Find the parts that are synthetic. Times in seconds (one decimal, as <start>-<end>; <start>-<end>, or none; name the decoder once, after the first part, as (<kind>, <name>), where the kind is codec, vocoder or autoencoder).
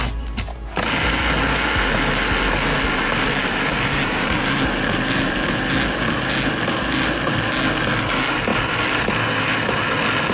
8.5-9.0 (vocoder, BigVGAN v2)